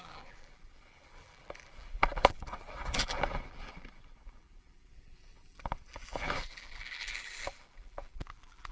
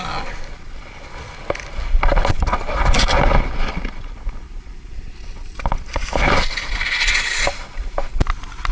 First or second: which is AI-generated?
first